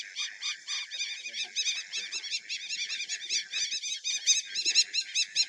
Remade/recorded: recorded